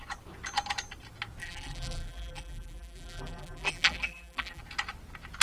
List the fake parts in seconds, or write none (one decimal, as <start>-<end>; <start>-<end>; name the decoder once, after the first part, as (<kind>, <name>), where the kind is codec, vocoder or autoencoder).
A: 1.4-4.6 (vocoder, BigVGAN v2)